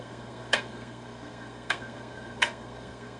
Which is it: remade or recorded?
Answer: remade